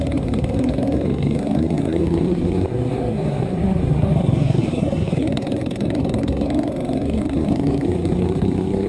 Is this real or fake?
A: fake